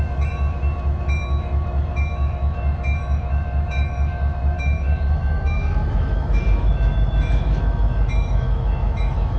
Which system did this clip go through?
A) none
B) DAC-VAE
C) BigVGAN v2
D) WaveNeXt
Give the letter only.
B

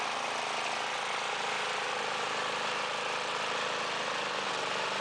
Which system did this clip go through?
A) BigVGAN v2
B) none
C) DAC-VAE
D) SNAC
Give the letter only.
B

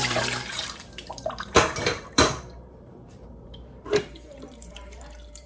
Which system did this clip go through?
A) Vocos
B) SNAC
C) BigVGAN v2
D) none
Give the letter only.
C